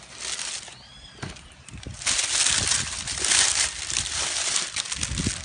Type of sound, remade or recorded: recorded